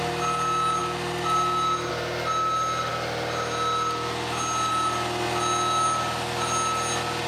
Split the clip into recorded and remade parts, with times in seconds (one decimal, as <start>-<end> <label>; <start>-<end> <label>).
0.0-7.3 recorded